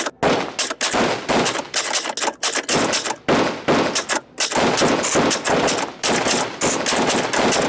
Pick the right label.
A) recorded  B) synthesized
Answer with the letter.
A